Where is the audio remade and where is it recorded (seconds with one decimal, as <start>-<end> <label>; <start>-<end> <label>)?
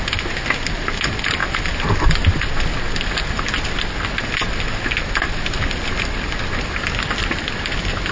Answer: 0.0-8.1 recorded